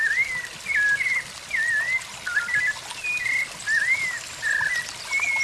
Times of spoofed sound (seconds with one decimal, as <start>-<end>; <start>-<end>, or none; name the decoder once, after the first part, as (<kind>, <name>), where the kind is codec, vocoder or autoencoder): none